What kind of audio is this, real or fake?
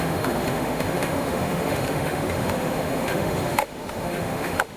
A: fake